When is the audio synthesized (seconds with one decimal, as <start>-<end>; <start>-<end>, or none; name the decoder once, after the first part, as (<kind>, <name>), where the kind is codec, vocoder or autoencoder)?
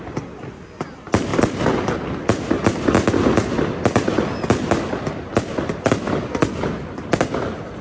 none